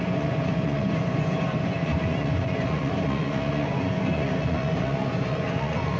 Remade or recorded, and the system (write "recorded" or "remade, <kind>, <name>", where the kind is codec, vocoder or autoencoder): remade, vocoder, Vocos